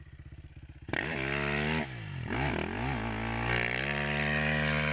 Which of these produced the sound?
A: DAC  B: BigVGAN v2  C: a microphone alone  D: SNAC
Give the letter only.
C